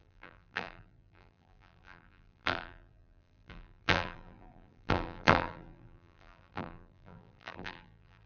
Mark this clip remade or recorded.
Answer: remade